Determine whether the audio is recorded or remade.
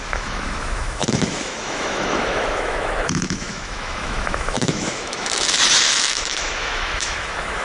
remade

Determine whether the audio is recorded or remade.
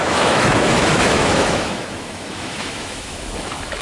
remade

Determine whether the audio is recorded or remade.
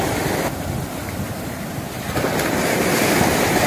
recorded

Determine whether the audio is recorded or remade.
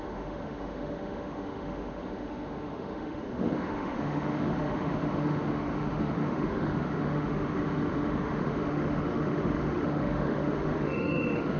remade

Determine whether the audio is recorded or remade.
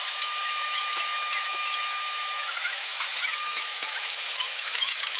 remade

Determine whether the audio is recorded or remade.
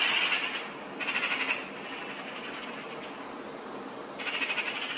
recorded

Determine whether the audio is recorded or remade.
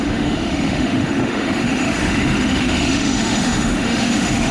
remade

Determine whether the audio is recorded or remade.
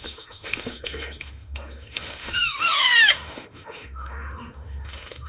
remade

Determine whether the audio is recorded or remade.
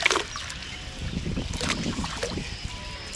recorded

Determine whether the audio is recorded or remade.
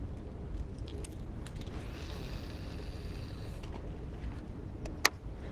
recorded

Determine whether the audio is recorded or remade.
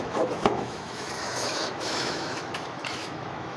remade